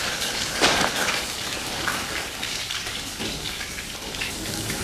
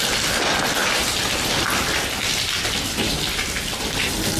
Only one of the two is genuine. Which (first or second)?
second